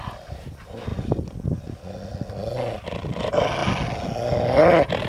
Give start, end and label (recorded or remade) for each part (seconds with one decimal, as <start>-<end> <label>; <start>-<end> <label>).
0.0-5.1 recorded